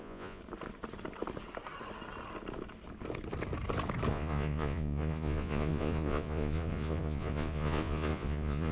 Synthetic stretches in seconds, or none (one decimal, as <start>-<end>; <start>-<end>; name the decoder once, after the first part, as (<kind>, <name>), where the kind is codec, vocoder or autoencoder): 0.0-0.4 (vocoder, Vocos); 4.1-8.7